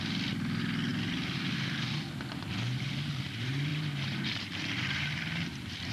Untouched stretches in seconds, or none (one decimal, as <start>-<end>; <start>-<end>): 0.0-3.7